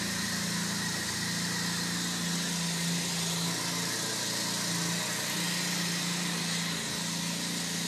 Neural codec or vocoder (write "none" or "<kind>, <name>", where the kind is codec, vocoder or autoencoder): none